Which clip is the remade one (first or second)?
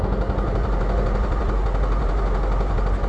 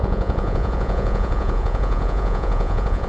second